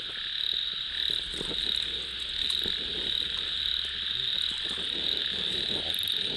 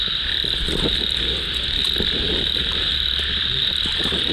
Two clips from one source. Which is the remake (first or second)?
second